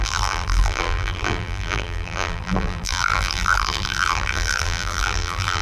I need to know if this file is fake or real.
fake